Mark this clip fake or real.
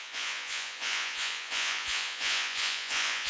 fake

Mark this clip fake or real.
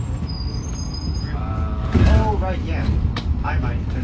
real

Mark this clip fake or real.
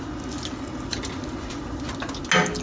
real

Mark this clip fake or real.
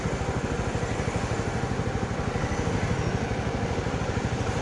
real